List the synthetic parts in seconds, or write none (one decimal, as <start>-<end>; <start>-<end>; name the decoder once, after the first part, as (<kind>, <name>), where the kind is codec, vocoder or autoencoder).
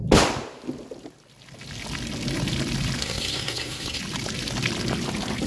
3.0-4.0 (codec, SNAC)